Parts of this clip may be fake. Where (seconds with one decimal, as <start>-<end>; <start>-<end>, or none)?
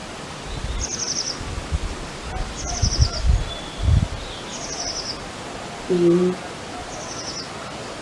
none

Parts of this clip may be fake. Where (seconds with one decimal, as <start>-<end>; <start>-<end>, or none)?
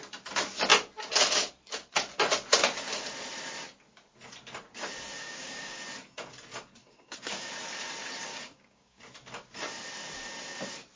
5.2-5.8; 6.8-7.5; 8.3-9.0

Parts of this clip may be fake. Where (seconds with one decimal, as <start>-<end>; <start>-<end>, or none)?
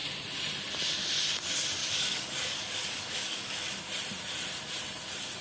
1.8-3.7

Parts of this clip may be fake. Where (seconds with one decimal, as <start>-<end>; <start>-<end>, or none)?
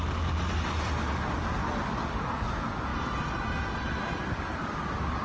2.0-2.5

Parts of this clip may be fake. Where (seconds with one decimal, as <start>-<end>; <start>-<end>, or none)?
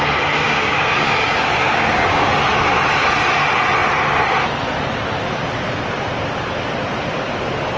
0.4-2.3